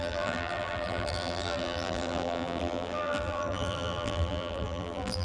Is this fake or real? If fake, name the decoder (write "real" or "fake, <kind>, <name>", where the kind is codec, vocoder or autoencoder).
fake, vocoder, BigVGAN v2